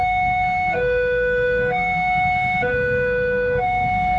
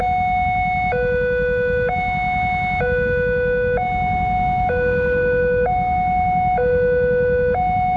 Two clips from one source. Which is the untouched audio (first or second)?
second